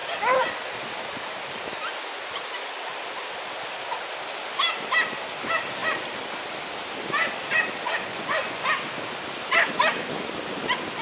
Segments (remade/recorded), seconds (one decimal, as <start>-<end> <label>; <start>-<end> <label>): 0.0-8.1 recorded; 8.1-8.7 remade; 8.7-11.0 recorded